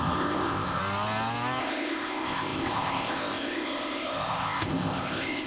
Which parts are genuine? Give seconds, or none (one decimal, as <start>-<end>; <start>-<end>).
0.8-1.6